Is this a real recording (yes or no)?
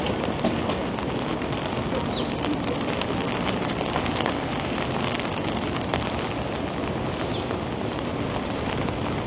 yes